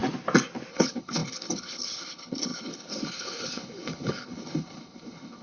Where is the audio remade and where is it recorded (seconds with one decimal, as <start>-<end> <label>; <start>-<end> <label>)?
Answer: 0.0-0.7 recorded; 0.7-5.4 remade